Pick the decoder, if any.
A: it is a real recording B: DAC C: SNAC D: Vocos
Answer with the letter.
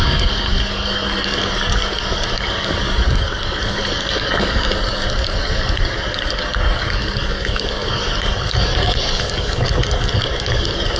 B